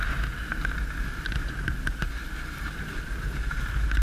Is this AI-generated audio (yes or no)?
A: no